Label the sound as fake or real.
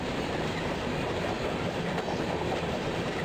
fake